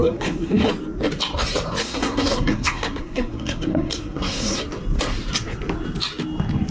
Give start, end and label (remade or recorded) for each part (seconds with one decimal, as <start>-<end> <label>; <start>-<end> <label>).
0.0-0.7 remade; 0.7-1.8 recorded; 1.8-4.6 remade; 4.6-6.7 recorded